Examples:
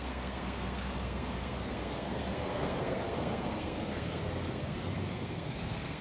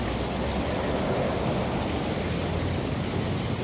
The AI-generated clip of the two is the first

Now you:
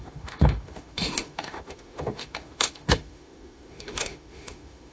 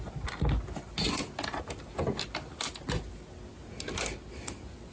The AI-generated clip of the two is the first